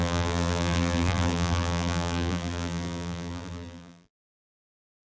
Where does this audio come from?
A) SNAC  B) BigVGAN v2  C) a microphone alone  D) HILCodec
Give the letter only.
B